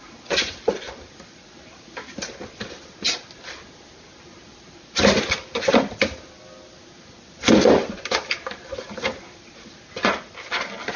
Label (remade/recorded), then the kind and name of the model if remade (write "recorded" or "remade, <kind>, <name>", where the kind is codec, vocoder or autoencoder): recorded